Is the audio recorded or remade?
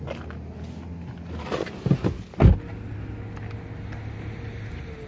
recorded